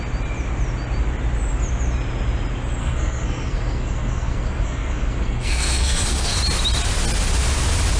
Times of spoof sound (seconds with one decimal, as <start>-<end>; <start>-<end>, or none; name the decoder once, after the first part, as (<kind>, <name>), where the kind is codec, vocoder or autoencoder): 2.8-6.4 (codec, SNAC)